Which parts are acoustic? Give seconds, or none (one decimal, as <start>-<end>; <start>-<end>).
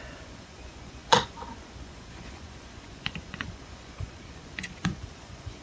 none